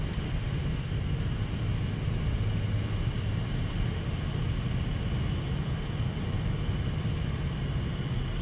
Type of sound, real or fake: real